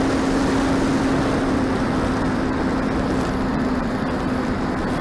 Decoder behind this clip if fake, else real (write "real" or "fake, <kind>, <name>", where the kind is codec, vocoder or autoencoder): real